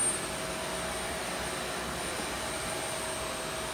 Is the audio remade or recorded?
recorded